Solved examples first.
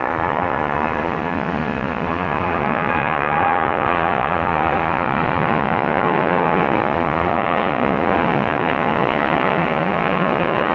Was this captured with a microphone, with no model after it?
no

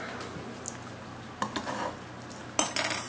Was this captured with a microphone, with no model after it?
yes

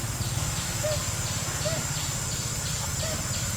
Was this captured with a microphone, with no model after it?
yes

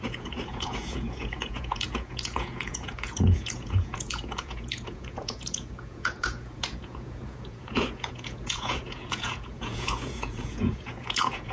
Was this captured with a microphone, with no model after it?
no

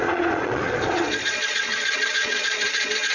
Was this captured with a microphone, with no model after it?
no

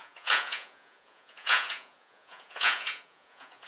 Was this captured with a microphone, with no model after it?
no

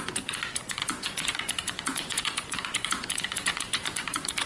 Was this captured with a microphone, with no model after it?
no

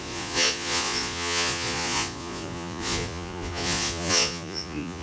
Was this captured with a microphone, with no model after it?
no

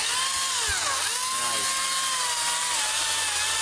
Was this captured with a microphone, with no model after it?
yes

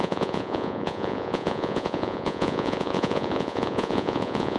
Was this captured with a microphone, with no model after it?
no